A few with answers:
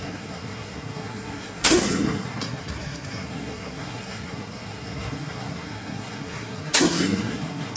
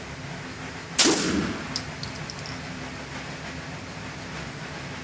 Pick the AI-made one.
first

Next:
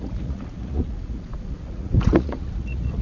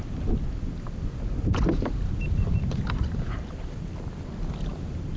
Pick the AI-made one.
first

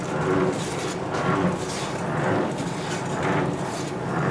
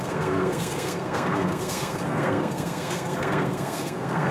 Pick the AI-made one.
second